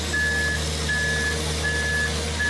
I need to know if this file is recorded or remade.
recorded